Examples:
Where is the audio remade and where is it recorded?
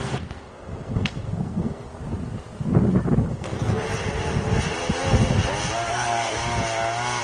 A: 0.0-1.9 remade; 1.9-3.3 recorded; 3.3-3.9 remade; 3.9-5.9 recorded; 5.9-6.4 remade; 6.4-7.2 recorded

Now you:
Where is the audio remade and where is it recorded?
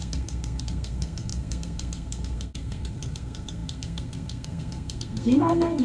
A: 0.0-5.8 remade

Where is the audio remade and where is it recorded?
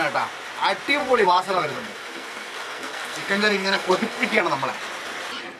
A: 0.0-1.0 recorded; 1.0-4.4 remade; 4.4-5.6 recorded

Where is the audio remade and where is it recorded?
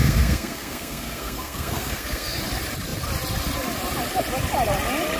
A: 0.0-2.4 remade; 2.4-5.2 recorded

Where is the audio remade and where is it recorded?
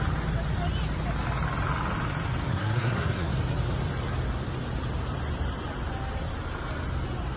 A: 0.0-2.5 recorded; 2.5-3.3 remade; 3.3-7.4 recorded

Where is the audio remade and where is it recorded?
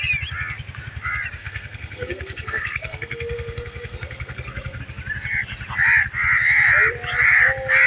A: 0.0-1.4 recorded; 1.4-4.8 remade; 4.8-7.9 recorded